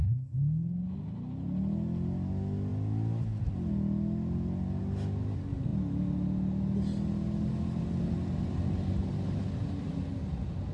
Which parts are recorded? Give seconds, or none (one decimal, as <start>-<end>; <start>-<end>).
0.0-10.7